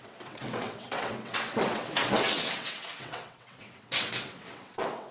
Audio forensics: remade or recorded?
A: remade